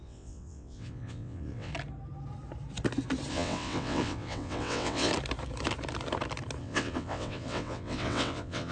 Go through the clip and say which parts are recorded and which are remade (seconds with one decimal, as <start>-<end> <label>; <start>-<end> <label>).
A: 0.0-1.7 remade; 1.7-3.3 recorded; 3.3-5.1 remade; 5.1-6.6 recorded; 6.6-8.7 remade